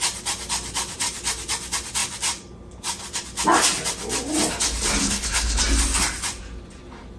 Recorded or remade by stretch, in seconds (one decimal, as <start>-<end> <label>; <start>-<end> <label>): 0.0-5.0 recorded; 5.0-5.6 remade; 5.6-7.2 recorded